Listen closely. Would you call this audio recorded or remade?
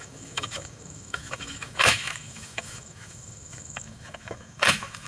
remade